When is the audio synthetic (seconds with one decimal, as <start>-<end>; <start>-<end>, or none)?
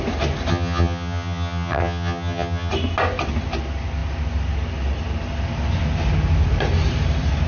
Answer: 0.5-2.7